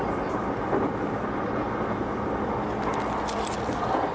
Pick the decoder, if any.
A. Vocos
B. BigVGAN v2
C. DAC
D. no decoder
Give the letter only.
D